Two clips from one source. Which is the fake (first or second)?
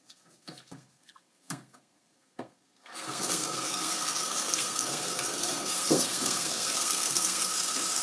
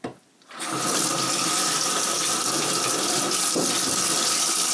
first